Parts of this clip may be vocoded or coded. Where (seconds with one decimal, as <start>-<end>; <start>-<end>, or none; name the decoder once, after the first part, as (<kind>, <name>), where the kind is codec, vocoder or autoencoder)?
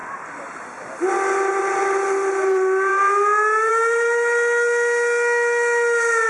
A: none